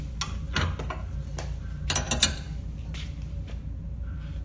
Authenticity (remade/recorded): recorded